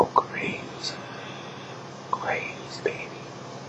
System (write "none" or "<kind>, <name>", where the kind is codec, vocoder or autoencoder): none